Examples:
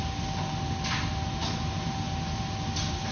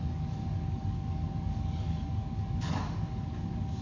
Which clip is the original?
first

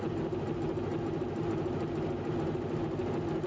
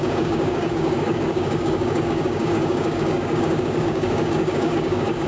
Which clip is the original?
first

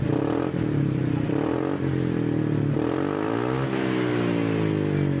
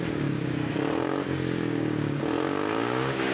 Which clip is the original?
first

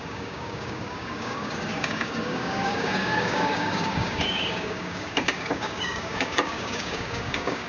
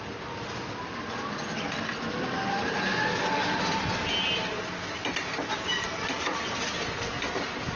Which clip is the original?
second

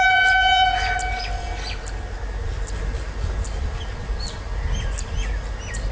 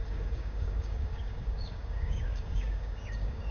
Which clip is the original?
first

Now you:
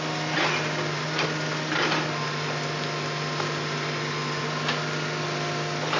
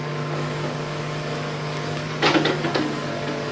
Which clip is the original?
first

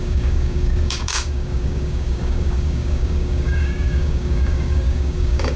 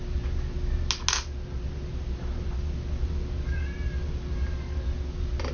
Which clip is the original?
second